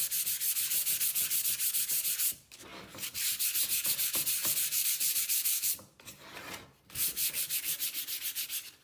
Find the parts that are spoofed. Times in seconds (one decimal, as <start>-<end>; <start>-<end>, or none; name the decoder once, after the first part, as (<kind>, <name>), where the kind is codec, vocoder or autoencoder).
4.4-8.2 (vocoder, BigVGAN v2)